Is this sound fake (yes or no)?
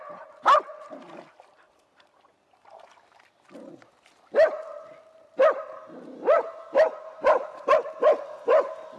no